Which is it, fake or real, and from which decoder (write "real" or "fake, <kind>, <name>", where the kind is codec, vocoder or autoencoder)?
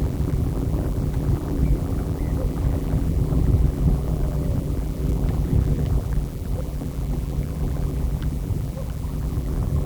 fake, vocoder, BigVGAN v2